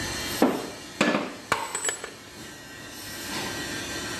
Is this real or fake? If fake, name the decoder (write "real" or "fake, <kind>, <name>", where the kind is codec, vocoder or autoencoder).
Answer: real